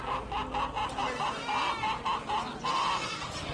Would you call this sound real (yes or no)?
yes